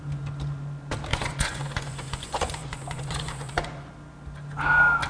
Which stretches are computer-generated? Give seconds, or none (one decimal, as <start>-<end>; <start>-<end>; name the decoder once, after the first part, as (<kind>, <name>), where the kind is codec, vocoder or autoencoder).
1.1-3.9 (vocoder, Vocos)